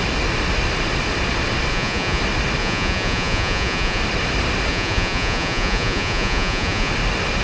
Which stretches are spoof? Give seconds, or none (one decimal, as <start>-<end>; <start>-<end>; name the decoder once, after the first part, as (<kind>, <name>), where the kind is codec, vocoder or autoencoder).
1.7-2.2 (vocoder, Vocos); 2.6-4.0; 4.7-6.9